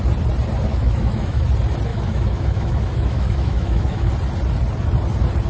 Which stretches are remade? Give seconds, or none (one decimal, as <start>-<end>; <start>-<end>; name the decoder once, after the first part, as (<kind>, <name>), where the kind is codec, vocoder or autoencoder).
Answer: 0.7-1.4 (autoencoder, DAC-VAE); 1.9-4.1